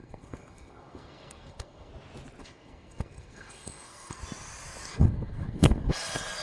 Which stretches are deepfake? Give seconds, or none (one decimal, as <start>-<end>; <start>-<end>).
0.0-1.9; 2.4-4.2; 4.9-5.9